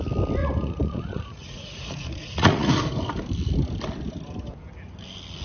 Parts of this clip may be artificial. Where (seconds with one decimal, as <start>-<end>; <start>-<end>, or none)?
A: 0.4-2.7